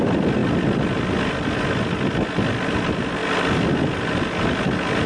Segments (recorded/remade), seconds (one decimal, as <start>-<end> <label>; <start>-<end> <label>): 0.0-5.1 recorded

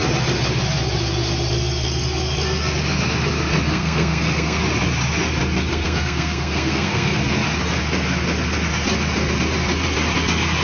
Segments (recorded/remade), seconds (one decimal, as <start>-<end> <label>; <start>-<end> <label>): 0.0-3.7 recorded; 3.7-4.6 remade; 4.6-5.7 recorded; 5.7-7.2 remade; 7.2-10.6 recorded

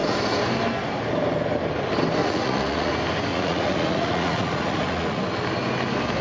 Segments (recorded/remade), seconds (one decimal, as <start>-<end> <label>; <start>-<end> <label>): 0.0-2.2 recorded; 2.2-2.9 remade; 2.9-3.3 recorded; 3.3-5.2 remade; 5.2-6.2 recorded